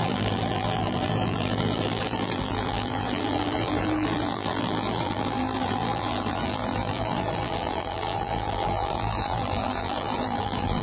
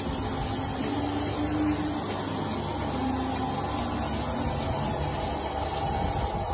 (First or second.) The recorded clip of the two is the second